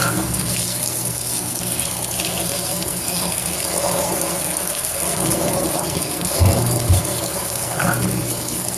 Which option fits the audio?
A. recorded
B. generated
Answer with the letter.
B